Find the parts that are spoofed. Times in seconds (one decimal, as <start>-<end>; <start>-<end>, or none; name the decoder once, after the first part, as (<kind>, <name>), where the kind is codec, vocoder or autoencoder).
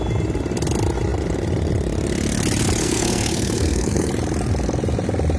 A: 2.8-4.1 (codec, SNAC)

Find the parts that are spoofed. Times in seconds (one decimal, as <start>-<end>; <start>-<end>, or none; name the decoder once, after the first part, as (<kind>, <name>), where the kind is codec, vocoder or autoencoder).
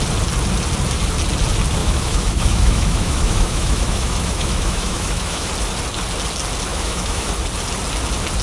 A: 1.8-5.5 (autoencoder, DAC-VAE); 6.7-7.3